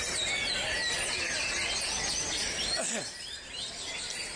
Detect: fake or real real